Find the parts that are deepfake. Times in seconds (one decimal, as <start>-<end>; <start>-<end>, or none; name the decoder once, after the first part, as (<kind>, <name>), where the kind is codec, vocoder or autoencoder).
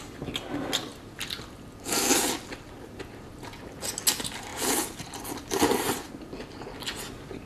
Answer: 4.5-6.1 (vocoder, BigVGAN v2)